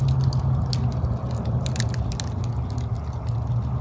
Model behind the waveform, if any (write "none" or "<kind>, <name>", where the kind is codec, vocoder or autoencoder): none